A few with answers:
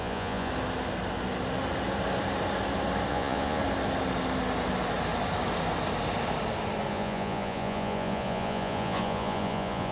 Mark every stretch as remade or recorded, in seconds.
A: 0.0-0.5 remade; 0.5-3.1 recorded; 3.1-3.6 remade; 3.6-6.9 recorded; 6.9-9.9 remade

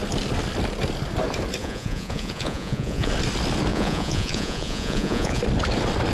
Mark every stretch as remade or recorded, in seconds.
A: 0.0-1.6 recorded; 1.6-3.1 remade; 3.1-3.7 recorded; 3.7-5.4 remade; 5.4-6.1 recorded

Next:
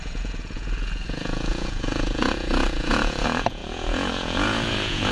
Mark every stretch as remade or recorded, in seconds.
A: 0.0-5.1 remade